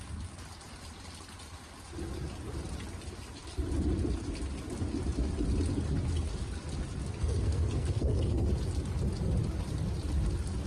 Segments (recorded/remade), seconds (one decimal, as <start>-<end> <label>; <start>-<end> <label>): 0.0-7.2 recorded; 7.2-8.5 remade; 8.5-10.7 recorded